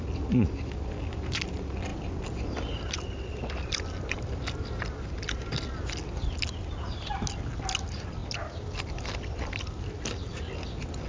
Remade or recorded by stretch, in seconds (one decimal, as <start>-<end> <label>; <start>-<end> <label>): 0.0-11.1 recorded